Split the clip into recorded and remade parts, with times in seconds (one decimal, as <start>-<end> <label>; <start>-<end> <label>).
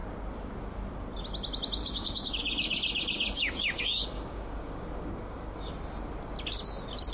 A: 0.0-1.8 recorded; 1.8-5.7 remade; 5.7-7.1 recorded